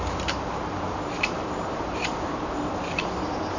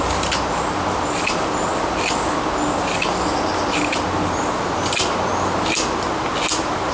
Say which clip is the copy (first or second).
first